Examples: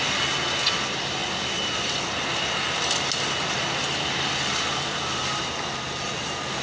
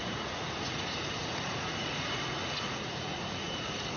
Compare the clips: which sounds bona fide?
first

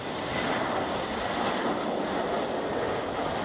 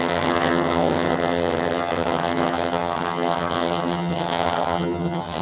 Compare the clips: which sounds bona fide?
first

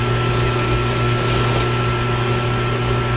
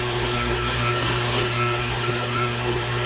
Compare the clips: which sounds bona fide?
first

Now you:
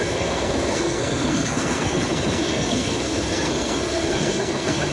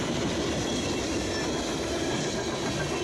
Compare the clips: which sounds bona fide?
second